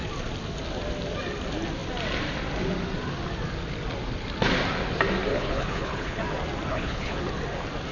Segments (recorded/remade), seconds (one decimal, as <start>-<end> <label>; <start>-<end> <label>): 0.0-5.3 recorded; 5.3-6.2 remade; 6.2-6.7 recorded; 6.7-7.2 remade; 7.2-7.9 recorded